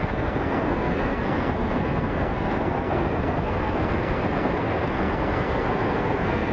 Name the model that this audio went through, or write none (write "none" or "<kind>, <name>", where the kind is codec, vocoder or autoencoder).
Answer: codec, SNAC